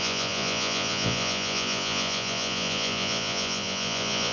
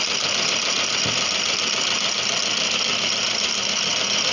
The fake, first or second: first